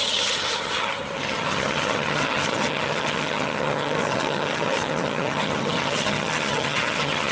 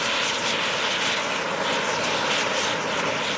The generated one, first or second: first